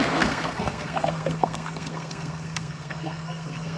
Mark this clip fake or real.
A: fake